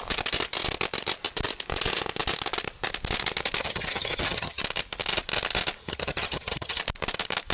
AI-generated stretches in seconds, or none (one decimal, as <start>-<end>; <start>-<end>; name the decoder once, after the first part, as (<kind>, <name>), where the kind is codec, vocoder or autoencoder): 3.6-4.6 (vocoder, HiFi-GAN); 5.8-6.8